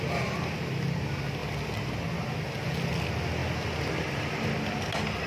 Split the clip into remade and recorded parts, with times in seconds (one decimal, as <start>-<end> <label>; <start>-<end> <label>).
0.0-5.3 recorded